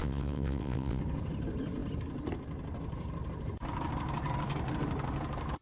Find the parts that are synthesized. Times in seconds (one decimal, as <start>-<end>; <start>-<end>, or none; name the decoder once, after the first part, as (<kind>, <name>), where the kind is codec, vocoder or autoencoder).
0.0-1.0 (vocoder, WaveNeXt)